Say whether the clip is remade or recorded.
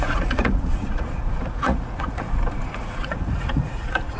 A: remade